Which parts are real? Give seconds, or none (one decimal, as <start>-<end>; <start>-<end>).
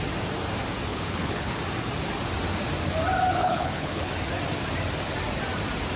0.0-0.9; 1.6-3.4; 4.1-6.0